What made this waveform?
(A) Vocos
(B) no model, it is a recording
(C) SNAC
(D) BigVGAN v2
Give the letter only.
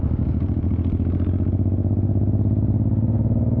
B